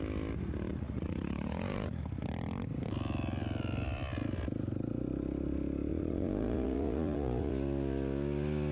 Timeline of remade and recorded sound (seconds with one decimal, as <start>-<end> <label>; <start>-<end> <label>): 0.0-0.7 recorded; 0.7-2.0 remade; 2.0-5.9 recorded; 5.9-7.5 remade; 7.5-8.7 recorded